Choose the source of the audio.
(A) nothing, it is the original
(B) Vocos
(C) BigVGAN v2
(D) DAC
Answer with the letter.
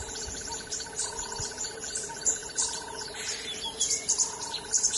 A